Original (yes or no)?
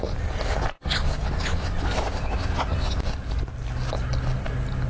yes